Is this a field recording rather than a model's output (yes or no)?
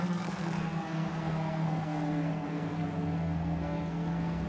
no